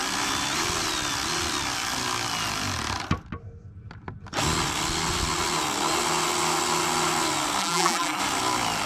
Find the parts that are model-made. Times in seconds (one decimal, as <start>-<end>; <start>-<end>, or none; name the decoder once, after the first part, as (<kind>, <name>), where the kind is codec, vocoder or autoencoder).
7.6-8.2 (vocoder, BigVGAN v2)